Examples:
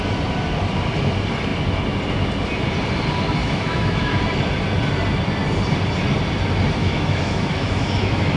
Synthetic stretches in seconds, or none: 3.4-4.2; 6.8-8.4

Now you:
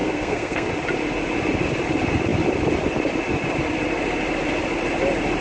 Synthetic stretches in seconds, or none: 0.0-0.7

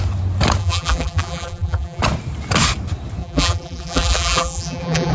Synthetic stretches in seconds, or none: 0.6-2.0; 3.2-5.1

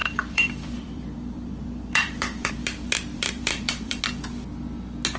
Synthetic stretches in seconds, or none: 0.0-2.5; 3.1-4.0